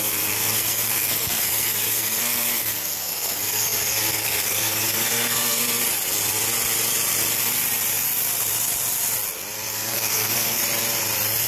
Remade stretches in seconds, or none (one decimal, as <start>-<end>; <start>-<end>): 0.0-5.8; 9.7-10.6

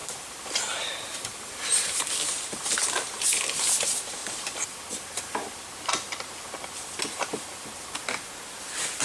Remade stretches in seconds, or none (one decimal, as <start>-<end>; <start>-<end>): 0.0-2.1; 4.2-5.6

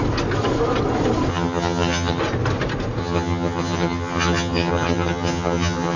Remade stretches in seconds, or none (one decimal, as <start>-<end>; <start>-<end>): 1.3-2.2; 3.0-6.0

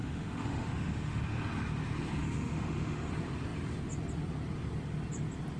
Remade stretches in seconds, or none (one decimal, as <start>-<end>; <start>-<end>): 0.0-1.2; 2.2-3.1

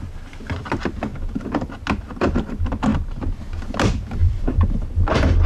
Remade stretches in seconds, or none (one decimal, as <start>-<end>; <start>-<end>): 1.1-1.7; 4.2-4.8

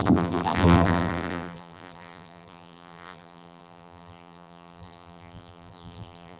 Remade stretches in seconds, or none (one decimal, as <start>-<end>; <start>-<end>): 0.0-6.4